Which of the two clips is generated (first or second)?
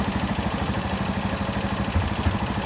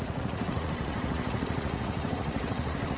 second